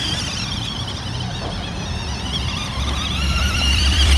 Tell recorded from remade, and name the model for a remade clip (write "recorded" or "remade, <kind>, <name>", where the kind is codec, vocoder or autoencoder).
remade, vocoder, BigVGAN v2